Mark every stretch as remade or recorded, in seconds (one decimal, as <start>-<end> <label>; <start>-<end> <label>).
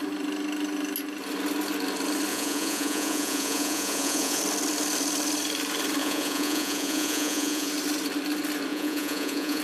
0.0-2.3 recorded; 2.3-4.4 remade; 4.4-6.0 recorded; 6.0-7.7 remade; 7.7-8.7 recorded; 8.7-9.6 remade